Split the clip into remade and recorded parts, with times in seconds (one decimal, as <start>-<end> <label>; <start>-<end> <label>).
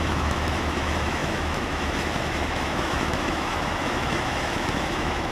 0.0-5.3 remade